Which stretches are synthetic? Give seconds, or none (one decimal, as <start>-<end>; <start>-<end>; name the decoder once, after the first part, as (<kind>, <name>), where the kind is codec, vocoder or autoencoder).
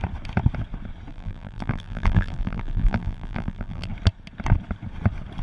1.1-3.9 (vocoder, BigVGAN v2)